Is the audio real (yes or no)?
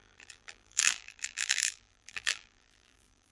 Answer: no